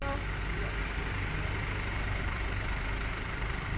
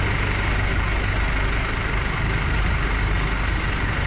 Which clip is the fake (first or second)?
first